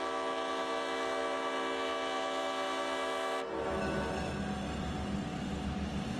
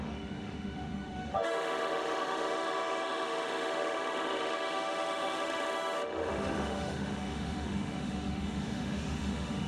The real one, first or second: first